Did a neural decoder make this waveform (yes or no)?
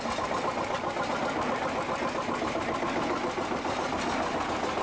no